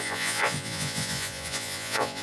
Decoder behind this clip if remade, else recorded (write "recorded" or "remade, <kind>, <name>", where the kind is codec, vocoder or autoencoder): remade, vocoder, Vocos